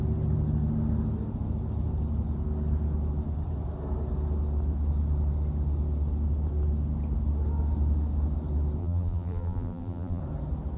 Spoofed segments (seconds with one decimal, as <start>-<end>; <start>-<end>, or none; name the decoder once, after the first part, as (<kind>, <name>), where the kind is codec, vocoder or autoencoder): 8.8-10.2 (vocoder, BigVGAN v2)